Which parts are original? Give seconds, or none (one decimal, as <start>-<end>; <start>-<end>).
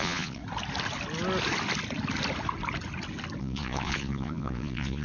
0.4-3.4